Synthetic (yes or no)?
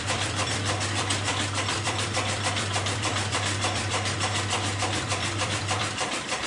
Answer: yes